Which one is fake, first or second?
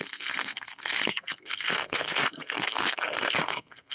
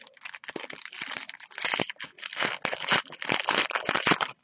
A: first